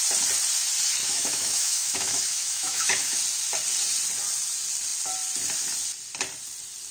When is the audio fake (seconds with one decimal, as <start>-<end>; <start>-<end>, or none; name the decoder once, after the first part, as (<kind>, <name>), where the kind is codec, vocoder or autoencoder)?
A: 1.0-3.2 (autoencoder, DAC-VAE)